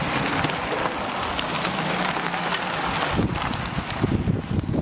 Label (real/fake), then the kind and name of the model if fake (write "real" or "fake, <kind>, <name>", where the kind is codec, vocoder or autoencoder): real